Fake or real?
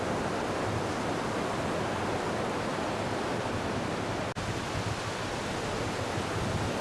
real